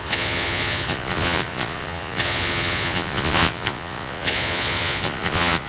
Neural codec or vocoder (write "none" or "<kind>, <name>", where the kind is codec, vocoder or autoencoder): vocoder, Vocos